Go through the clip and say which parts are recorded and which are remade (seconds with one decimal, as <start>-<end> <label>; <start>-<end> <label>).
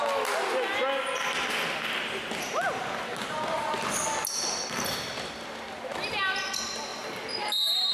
0.0-6.9 recorded; 6.9-7.9 remade